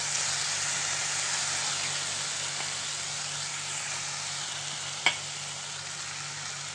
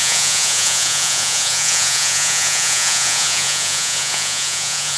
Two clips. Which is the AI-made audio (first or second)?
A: second